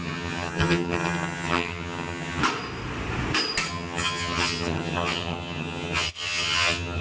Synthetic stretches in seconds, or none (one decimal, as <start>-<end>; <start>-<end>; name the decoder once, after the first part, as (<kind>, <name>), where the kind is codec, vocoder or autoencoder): 0.0-2.4 (vocoder, HiFi-GAN); 3.7-7.0